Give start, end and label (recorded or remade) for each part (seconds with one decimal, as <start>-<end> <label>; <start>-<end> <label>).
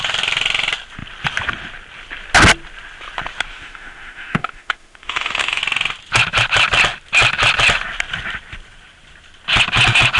0.0-3.5 recorded; 3.5-5.6 remade; 5.6-10.2 recorded